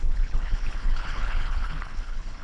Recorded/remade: remade